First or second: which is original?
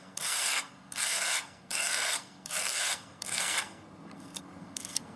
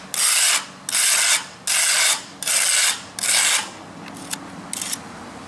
second